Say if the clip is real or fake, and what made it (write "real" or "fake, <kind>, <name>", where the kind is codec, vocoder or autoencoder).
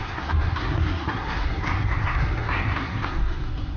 fake, codec, SNAC